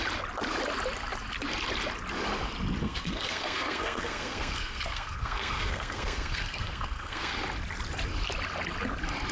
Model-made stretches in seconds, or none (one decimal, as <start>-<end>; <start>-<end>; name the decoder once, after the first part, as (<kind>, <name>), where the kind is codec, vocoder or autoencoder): 2.8-7.3 (codec, SNAC)